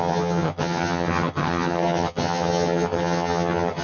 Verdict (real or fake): fake